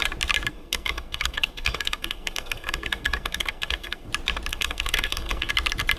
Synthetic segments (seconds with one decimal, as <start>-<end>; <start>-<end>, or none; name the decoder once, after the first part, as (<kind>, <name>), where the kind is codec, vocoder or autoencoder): 0.5-4.1 (codec, SNAC); 4.5-5.5